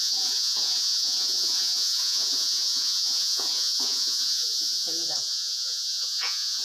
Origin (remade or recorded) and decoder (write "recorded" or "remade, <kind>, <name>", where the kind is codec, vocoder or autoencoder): remade, vocoder, Vocos